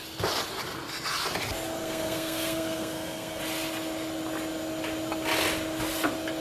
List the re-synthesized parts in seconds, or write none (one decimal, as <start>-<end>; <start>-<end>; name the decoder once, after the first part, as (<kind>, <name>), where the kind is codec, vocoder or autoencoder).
1.8-3.4 (codec, SNAC)